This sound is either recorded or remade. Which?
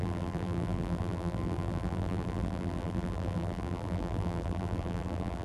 remade